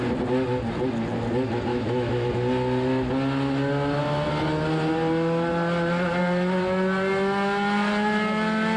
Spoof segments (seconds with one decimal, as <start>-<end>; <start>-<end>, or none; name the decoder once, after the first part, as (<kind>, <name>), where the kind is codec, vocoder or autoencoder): 1.7-2.3 (autoencoder, DAC-VAE)

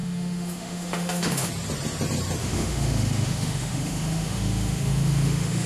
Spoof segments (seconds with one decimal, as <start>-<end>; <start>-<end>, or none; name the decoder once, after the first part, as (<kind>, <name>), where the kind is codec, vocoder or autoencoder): 0.0-1.5 (autoencoder, DAC-VAE); 2.4-5.7

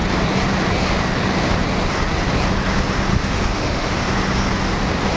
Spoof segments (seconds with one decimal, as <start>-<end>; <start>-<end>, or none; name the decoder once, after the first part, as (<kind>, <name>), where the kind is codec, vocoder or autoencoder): 3.1-3.9 (autoencoder, DAC-VAE)